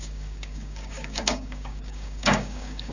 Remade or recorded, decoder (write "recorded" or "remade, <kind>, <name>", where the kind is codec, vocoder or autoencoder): remade, codec, DAC